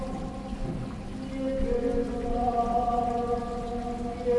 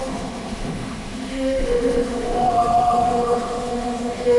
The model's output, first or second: second